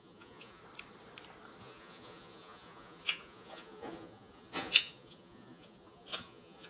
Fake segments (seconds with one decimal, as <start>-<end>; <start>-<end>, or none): 0.0-0.6; 1.6-6.7